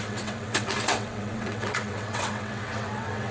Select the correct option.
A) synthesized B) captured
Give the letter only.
A